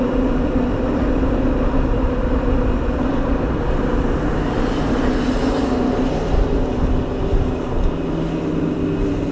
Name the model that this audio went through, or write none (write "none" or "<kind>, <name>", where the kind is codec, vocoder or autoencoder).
none